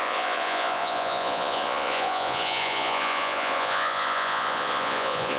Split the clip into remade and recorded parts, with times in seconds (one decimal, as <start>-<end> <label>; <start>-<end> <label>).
0.0-5.4 remade

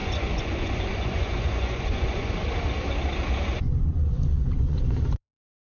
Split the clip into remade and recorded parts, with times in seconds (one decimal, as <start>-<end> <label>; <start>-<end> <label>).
0.0-2.3 remade; 2.3-3.5 recorded; 3.5-5.7 remade